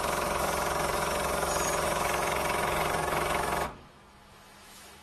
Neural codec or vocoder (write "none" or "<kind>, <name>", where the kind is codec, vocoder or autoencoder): autoencoder, DAC-VAE